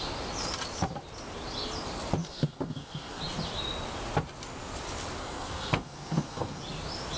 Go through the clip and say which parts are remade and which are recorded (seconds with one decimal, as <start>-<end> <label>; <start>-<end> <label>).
0.0-2.2 recorded; 2.2-3.2 remade; 3.2-5.2 recorded; 5.2-6.6 remade; 6.6-7.2 recorded